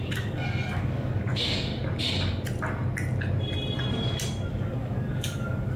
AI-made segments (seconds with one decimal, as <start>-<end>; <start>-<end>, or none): 0.0-1.7; 4.5-5.8